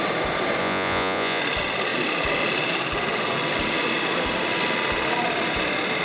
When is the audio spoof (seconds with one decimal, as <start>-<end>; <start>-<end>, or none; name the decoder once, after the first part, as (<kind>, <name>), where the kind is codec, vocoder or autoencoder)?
0.6-1.4 (vocoder, Vocos)